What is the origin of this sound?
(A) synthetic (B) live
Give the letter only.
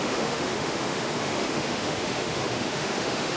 A